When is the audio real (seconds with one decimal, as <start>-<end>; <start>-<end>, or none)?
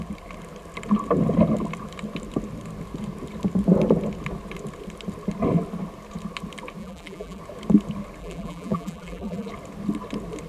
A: 0.0-6.8; 7.4-8.2; 9.5-10.5